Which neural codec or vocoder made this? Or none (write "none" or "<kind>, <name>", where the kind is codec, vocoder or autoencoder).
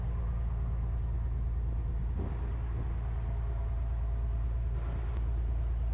none